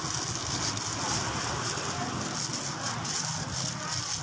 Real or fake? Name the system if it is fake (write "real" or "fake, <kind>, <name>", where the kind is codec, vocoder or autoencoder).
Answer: real